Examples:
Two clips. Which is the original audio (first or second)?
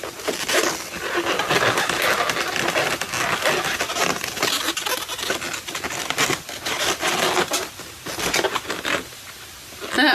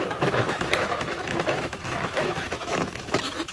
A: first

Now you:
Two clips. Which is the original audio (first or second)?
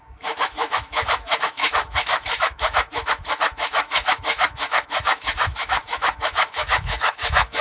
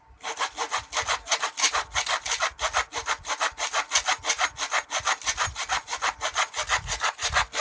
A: second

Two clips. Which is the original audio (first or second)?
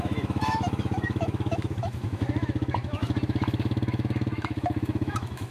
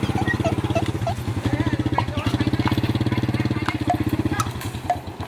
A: second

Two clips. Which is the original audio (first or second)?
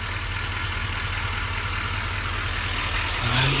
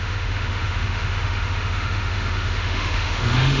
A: first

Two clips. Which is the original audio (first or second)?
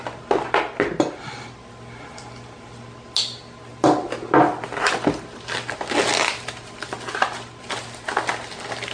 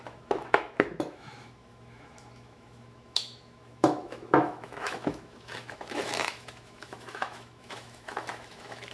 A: first